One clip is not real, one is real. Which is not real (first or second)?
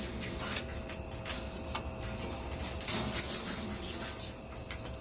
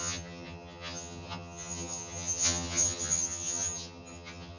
second